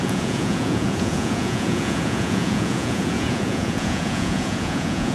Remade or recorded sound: remade